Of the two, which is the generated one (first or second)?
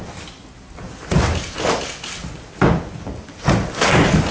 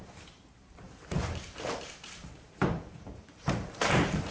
second